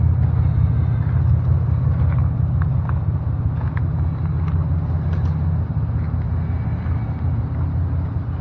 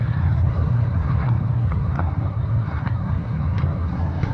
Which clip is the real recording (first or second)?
first